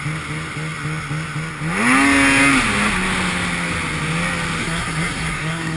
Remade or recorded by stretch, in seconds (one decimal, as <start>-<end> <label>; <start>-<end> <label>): 0.0-4.6 recorded; 4.6-5.8 remade